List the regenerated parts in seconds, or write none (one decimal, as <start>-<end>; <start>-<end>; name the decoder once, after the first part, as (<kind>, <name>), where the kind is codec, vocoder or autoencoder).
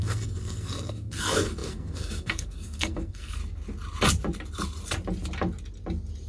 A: 0.0-3.4 (codec, SNAC)